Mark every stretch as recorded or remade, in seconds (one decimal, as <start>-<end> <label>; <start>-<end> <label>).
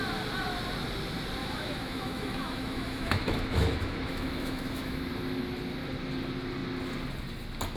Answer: 0.0-1.4 recorded; 1.4-5.1 remade; 5.1-7.8 recorded